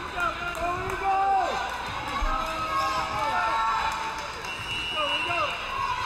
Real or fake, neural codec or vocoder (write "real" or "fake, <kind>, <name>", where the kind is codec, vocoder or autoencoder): real